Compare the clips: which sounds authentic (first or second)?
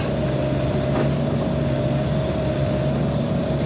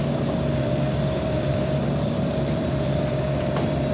first